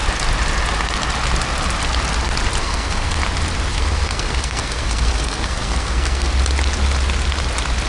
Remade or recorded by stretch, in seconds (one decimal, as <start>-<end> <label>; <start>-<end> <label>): 0.0-2.6 recorded; 2.6-3.2 remade; 3.2-3.7 recorded; 3.7-6.3 remade; 6.3-7.9 recorded